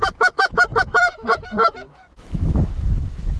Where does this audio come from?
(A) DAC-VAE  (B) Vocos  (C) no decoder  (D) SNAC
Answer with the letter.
A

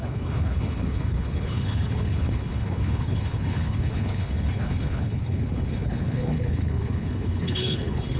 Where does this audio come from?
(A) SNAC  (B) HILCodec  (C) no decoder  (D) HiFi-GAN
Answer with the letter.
B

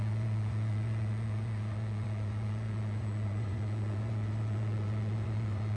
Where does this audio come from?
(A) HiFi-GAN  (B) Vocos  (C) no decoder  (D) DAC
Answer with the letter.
B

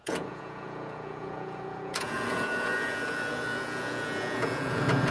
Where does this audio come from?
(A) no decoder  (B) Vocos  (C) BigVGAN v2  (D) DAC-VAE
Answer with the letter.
B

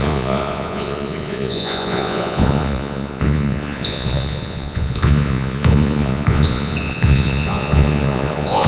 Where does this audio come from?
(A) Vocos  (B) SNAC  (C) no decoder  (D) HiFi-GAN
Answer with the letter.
A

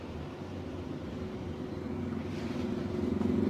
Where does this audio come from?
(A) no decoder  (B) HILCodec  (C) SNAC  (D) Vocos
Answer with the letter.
A